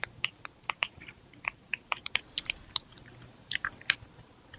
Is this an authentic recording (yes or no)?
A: no